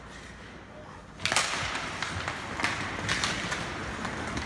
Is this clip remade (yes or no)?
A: no